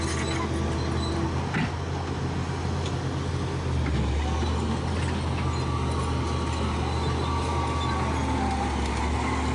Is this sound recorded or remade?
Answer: recorded